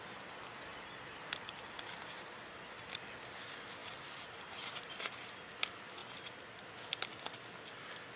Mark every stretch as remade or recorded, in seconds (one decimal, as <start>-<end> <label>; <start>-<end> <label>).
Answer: 0.0-0.7 recorded; 0.7-2.0 remade; 2.0-3.8 recorded; 3.8-4.5 remade; 4.5-8.2 recorded